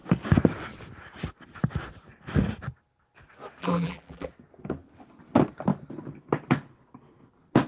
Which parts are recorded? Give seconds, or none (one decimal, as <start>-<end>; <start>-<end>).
0.0-3.6; 4.3-7.7